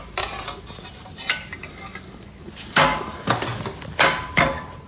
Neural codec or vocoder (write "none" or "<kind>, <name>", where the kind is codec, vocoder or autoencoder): none